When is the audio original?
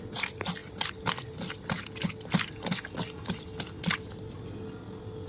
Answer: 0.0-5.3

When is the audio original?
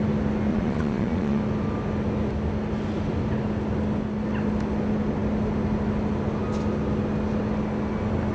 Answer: 0.0-0.5; 1.4-8.3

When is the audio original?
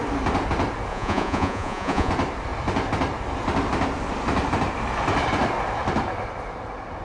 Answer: 0.0-0.9; 2.1-7.0